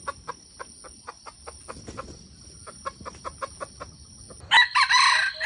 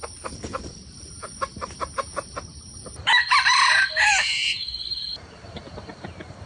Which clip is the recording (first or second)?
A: first